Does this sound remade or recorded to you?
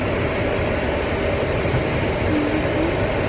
recorded